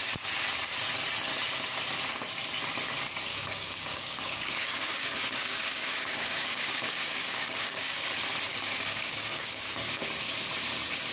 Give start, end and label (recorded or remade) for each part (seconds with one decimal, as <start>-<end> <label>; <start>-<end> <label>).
0.0-3.3 recorded; 3.3-8.1 remade; 8.1-8.5 recorded; 8.5-10.0 remade; 10.0-11.1 recorded